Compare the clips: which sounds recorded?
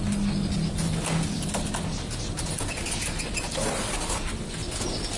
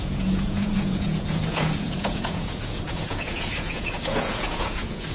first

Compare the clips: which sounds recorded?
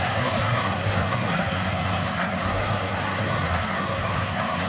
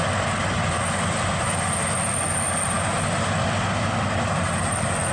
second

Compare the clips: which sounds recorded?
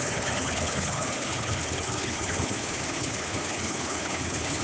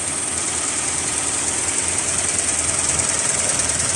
second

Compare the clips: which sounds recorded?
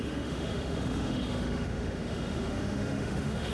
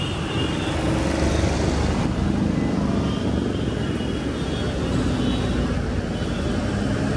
second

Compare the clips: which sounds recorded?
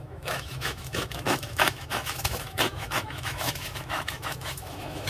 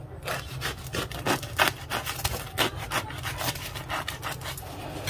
second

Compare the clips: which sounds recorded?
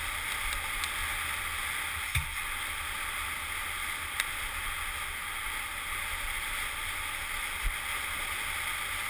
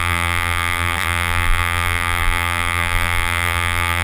first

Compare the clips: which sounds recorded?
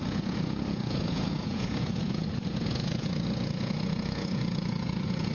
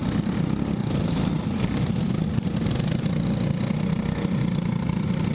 second